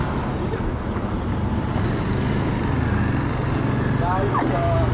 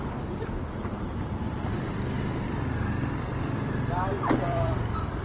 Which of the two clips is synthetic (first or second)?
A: second